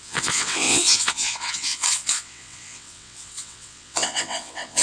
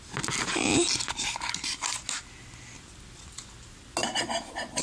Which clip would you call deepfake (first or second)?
first